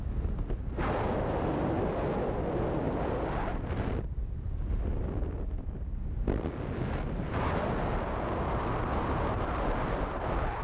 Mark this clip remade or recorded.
recorded